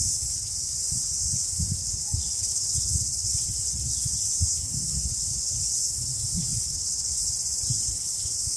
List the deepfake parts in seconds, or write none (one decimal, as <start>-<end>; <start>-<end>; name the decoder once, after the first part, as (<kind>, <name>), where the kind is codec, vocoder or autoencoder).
1.8-4.1 (vocoder, WaveNeXt); 4.8-5.8; 6.5-7.2